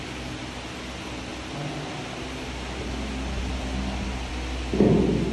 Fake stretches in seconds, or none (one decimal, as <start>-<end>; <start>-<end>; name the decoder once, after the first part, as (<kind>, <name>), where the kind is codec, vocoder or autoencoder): none